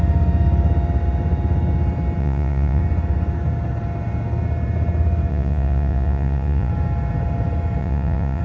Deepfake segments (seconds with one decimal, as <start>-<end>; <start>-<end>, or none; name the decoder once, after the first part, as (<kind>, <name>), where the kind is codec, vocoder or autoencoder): 2.2-2.8 (vocoder, Vocos); 5.3-6.7; 7.8-8.4